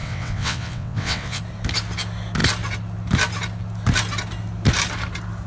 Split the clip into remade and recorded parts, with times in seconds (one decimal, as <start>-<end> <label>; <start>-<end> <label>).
0.0-1.4 remade; 1.4-5.5 recorded